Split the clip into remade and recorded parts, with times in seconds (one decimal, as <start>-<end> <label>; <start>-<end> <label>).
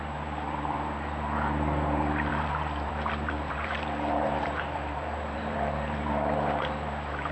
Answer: 0.0-7.3 remade